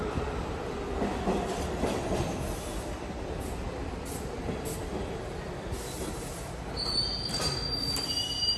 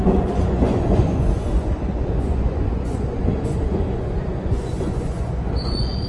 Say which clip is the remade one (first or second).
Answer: second